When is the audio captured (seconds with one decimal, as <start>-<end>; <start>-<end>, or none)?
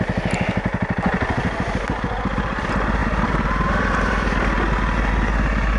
0.0-5.8